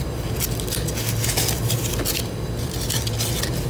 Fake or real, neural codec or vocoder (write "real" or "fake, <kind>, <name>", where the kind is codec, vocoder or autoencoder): real